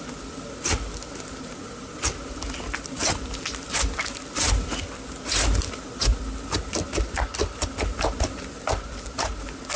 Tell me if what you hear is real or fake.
real